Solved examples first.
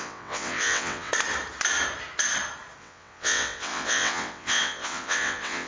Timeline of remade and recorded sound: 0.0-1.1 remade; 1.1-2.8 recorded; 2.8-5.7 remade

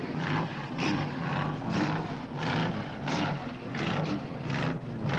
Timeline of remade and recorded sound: 0.0-2.6 recorded; 2.6-4.1 remade; 4.1-5.2 recorded